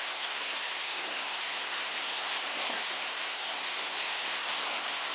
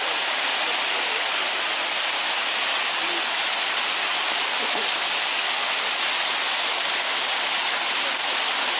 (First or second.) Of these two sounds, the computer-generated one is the first